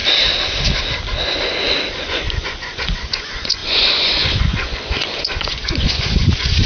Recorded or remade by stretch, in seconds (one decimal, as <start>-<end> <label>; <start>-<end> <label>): 0.0-1.9 recorded; 1.9-6.7 remade